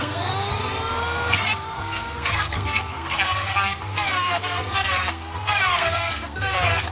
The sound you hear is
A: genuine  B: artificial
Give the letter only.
B